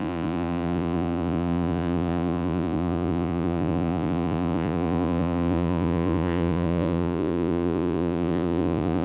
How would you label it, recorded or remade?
remade